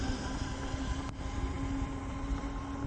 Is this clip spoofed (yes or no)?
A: no